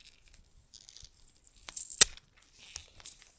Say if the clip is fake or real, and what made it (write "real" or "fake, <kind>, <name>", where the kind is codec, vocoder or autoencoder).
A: real